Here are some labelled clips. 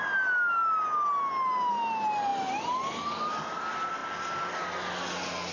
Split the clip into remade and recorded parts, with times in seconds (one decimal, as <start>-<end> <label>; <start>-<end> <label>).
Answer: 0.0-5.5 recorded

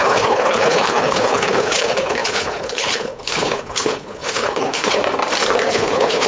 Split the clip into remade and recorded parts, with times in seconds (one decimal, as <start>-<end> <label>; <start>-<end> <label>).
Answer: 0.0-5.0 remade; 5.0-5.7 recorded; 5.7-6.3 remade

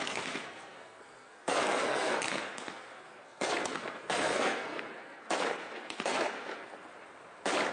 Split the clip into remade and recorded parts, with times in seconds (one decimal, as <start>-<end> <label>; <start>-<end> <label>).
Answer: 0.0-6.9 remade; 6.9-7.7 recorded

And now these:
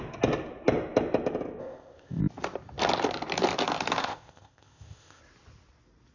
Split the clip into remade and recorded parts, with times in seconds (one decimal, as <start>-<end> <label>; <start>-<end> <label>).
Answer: 0.0-1.6 recorded; 1.6-2.2 remade; 2.2-4.0 recorded; 4.0-5.2 remade; 5.2-6.1 recorded